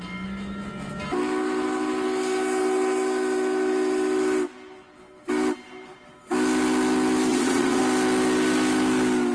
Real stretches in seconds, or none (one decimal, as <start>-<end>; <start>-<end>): 0.0-7.3; 7.8-9.3